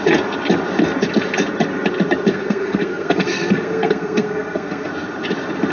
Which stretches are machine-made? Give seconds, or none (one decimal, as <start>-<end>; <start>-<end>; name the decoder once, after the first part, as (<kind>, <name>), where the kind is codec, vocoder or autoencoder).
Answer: 2.3-4.9 (codec, SNAC)